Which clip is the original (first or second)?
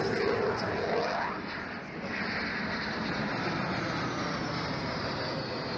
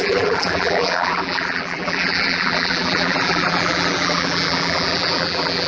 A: first